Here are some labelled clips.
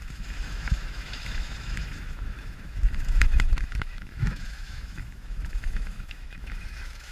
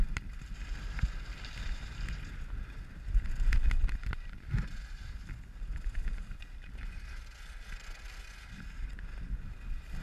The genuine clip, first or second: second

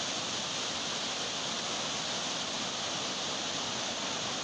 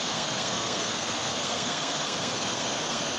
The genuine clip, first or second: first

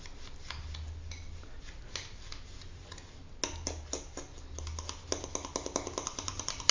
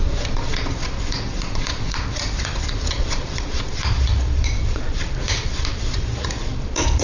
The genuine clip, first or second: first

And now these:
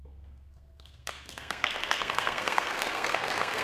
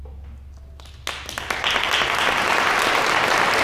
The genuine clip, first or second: second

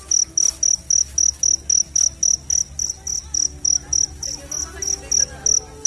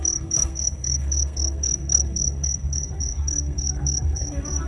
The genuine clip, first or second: first